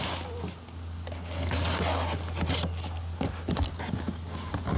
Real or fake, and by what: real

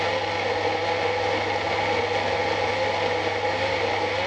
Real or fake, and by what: real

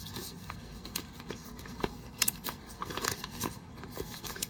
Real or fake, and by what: fake, codec, SNAC